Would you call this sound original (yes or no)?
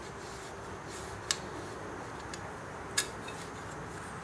yes